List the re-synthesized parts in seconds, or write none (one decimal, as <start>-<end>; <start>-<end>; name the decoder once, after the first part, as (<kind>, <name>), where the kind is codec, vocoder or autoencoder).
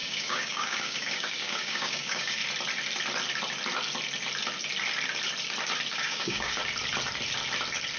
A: 0.0-2.4 (codec, DAC); 5.9-6.6